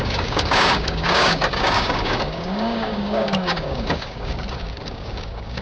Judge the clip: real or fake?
fake